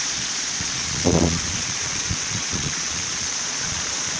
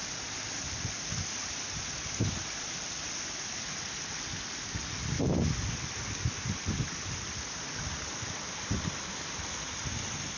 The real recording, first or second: second